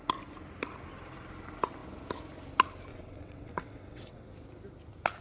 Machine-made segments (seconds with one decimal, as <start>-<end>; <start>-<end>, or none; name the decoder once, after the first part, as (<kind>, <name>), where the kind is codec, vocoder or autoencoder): 2.9-4.3 (vocoder, WaveNeXt)